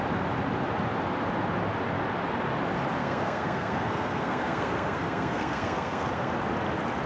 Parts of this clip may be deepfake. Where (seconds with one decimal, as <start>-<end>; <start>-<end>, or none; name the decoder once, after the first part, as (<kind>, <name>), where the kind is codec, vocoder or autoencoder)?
3.0-6.3 (codec, SNAC)